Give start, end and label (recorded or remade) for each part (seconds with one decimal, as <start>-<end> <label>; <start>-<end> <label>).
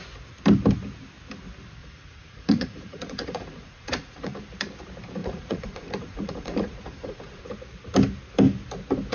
0.0-1.8 recorded; 1.8-4.4 remade; 4.4-5.2 recorded; 5.2-7.4 remade; 7.4-9.1 recorded